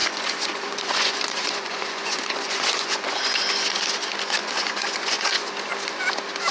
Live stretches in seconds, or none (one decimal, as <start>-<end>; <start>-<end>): 3.5-4.4; 5.5-6.5